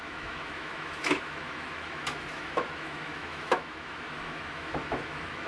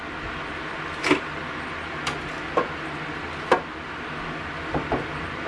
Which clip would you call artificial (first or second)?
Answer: first